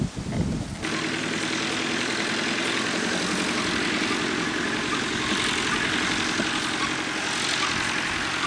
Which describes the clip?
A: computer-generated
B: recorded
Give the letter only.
B